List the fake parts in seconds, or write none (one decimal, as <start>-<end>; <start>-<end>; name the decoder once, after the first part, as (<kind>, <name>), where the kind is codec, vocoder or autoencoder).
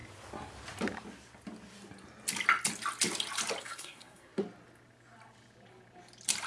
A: 3.6-4.4 (codec, SNAC)